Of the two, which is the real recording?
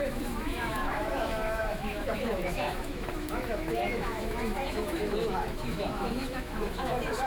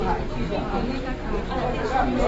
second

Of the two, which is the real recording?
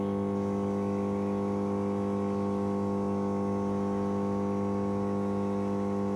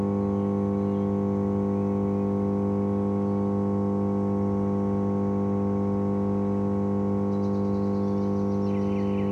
second